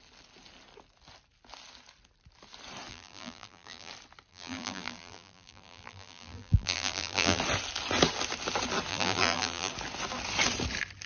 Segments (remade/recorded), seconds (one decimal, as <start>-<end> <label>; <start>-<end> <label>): 0.0-2.9 recorded; 2.9-3.9 remade; 3.9-4.3 recorded; 4.3-7.4 remade; 7.4-8.9 recorded; 8.9-9.7 remade; 9.7-11.1 recorded